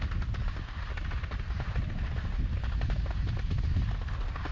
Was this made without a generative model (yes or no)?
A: yes